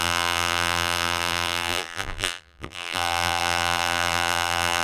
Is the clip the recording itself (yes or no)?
no